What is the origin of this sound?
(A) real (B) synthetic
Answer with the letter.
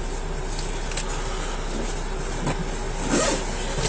A